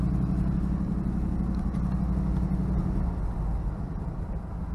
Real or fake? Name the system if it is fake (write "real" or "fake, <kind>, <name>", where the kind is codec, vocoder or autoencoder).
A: real